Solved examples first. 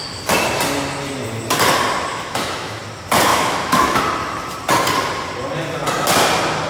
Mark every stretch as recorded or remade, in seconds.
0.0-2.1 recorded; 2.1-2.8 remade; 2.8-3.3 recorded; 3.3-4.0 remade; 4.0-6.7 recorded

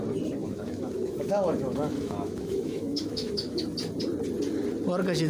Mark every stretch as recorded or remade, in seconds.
0.0-0.4 recorded; 0.4-3.6 remade; 3.6-5.3 recorded

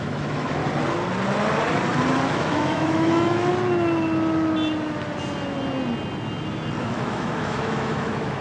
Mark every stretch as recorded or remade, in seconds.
0.0-0.6 remade; 0.6-2.3 recorded; 2.3-3.5 remade; 3.5-6.8 recorded; 6.8-8.4 remade

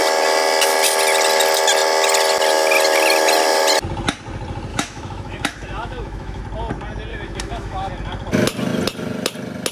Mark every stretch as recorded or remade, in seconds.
0.0-4.7 recorded; 4.7-6.4 remade; 6.4-7.1 recorded; 7.1-7.9 remade; 7.9-9.7 recorded

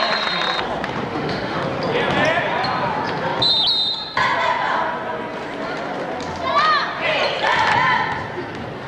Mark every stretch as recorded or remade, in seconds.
0.0-1.1 recorded; 1.1-1.6 remade; 1.6-8.9 recorded

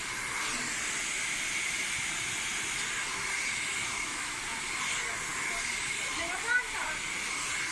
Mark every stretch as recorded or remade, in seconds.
0.0-3.8 recorded; 3.8-4.4 remade; 4.4-7.7 recorded